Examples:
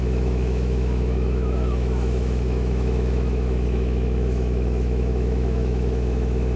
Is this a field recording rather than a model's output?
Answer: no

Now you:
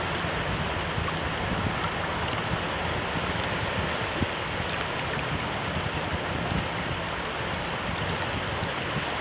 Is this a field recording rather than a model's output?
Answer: yes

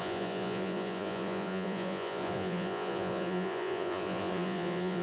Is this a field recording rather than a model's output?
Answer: no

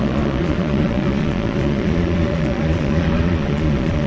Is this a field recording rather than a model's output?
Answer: no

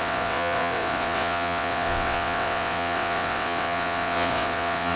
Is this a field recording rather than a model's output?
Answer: no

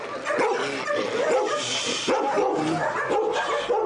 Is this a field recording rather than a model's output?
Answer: yes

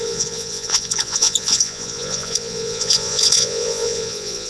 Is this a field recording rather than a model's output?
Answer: no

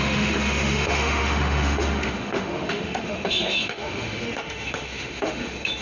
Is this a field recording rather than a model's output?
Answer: no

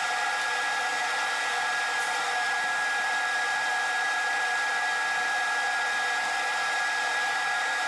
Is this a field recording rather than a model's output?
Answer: yes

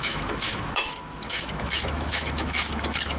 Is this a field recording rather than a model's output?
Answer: no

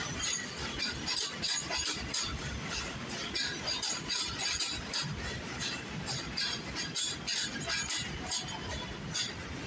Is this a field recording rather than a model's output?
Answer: yes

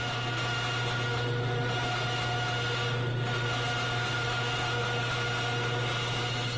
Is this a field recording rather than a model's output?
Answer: yes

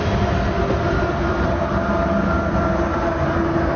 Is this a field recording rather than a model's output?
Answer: yes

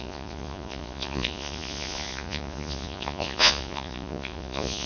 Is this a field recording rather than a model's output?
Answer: no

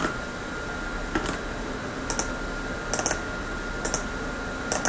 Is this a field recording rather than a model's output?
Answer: yes